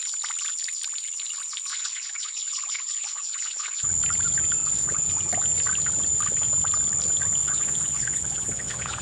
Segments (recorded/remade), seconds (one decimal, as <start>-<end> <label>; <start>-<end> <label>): 0.0-1.7 recorded; 1.7-3.9 remade; 3.9-4.6 recorded; 4.6-5.1 remade; 5.1-7.4 recorded; 7.4-9.0 remade